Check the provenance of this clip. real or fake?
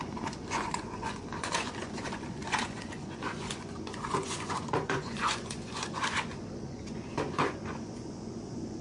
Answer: fake